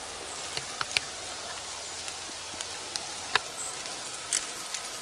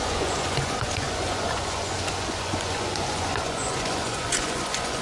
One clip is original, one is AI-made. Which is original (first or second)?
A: first